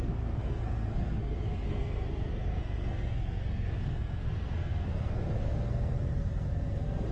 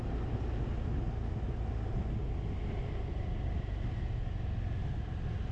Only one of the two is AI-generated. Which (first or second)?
first